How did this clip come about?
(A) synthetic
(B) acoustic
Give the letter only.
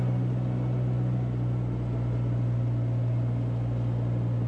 B